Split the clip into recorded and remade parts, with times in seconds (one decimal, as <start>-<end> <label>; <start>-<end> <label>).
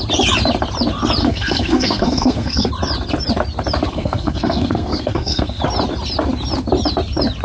0.0-1.2 recorded; 1.2-2.7 remade; 2.7-3.9 recorded; 3.9-5.6 remade; 5.6-7.4 recorded